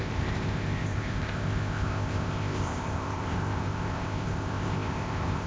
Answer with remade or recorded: remade